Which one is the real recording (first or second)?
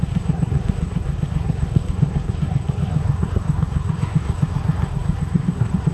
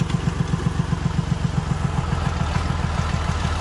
second